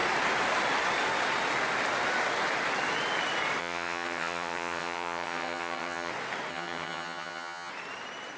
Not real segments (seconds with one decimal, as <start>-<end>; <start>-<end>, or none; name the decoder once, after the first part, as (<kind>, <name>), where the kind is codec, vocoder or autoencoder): 3.6-6.1 (vocoder, HiFi-GAN); 6.5-7.7